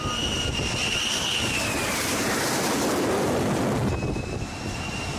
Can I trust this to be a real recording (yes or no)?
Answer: yes